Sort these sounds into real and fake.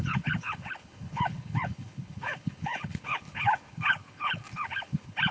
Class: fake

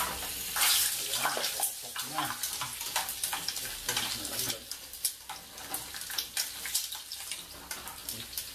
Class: real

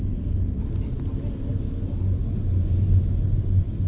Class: real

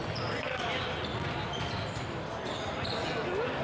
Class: real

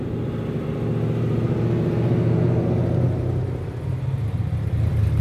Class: real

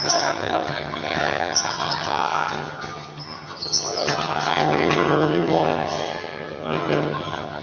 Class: fake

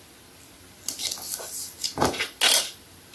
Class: real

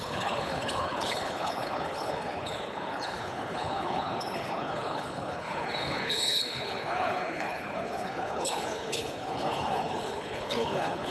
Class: fake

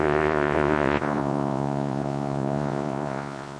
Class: fake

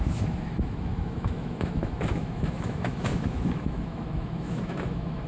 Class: fake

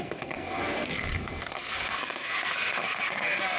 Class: fake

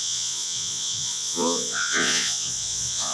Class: fake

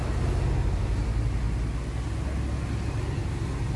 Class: real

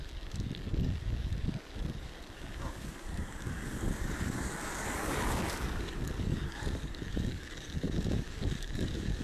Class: fake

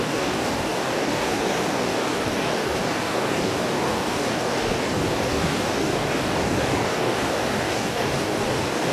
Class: fake